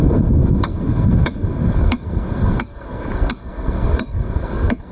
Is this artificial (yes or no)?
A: yes